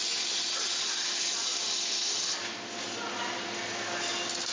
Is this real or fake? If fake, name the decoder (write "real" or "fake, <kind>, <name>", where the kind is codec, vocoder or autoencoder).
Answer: real